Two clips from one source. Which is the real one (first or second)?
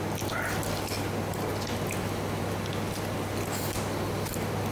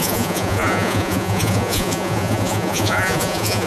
first